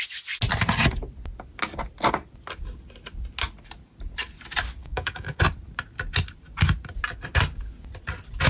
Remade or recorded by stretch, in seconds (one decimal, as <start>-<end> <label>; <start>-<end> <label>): 0.0-4.8 recorded; 4.8-5.4 remade; 5.4-8.5 recorded

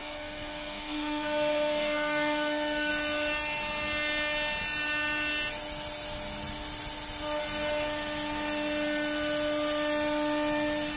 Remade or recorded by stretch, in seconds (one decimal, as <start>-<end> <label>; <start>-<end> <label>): 0.0-2.9 remade; 2.9-11.0 recorded

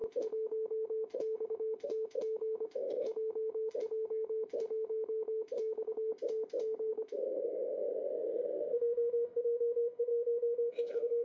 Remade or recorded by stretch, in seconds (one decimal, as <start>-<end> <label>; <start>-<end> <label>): 0.0-6.1 remade; 6.1-6.9 recorded; 6.9-11.2 remade

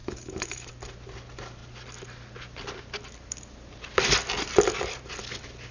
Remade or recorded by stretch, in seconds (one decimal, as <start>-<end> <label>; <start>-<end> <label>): 0.0-0.7 remade; 0.7-5.7 recorded

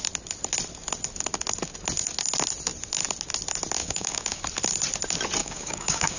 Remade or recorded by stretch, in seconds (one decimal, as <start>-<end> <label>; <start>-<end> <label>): 0.0-3.8 recorded; 3.8-4.4 remade; 4.4-5.4 recorded; 5.4-6.2 remade

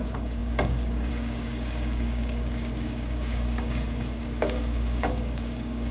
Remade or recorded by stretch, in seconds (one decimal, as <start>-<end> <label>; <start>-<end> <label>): 0.0-5.9 remade

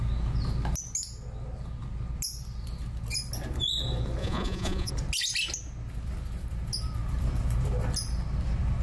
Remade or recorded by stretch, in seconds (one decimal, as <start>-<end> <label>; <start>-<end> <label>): 0.0-4.2 recorded; 4.2-4.9 remade; 4.9-8.8 recorded

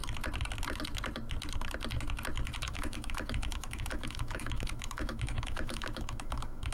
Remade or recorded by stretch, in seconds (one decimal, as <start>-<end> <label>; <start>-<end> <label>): 0.0-2.6 recorded; 2.6-6.7 remade